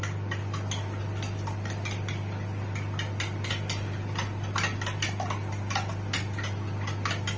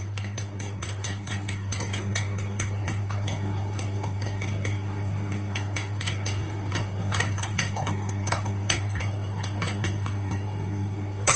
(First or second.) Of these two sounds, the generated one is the second